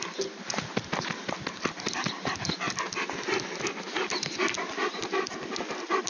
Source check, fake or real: real